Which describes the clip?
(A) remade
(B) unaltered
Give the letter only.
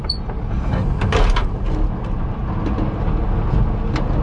B